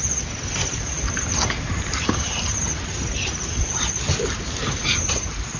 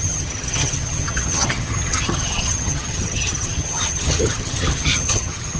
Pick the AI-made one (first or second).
second